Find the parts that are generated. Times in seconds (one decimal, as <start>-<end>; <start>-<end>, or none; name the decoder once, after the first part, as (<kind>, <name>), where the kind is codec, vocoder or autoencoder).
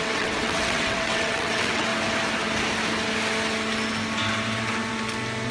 0.0-1.9 (vocoder, WaveNeXt)